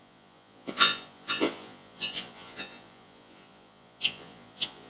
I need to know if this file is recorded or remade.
remade